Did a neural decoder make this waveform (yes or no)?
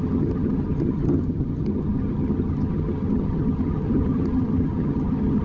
yes